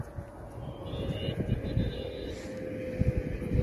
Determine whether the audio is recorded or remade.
recorded